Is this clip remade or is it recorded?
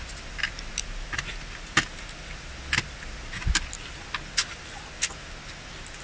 recorded